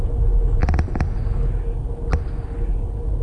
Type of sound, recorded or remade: recorded